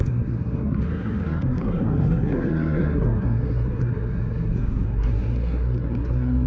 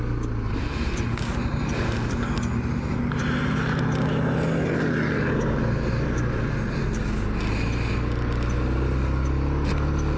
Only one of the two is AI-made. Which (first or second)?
first